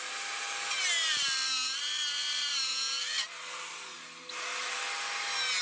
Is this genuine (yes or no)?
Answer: yes